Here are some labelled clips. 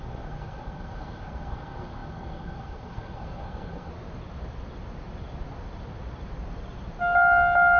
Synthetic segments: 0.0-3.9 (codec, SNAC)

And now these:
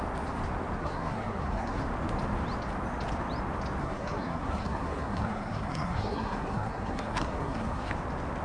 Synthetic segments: 0.8-1.8 (codec, SNAC); 3.8-7.9

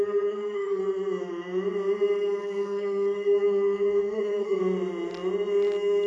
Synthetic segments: 0.0-0.8 (codec, SNAC); 2.4-4.6

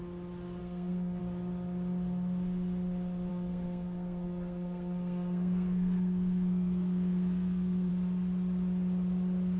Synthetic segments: 0.6-1.2 (codec, SNAC); 3.3-7.9

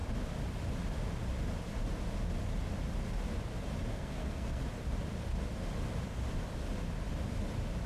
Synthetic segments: 3.9-4.6 (codec, SNAC)